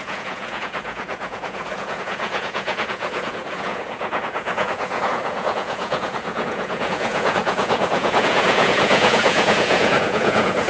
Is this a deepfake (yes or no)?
yes